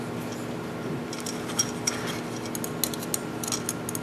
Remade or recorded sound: recorded